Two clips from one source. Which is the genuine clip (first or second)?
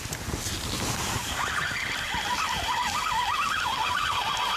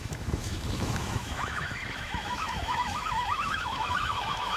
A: first